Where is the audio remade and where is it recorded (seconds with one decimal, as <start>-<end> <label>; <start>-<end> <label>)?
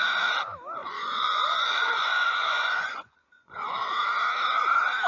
0.0-0.8 recorded; 0.8-3.9 remade; 3.9-5.1 recorded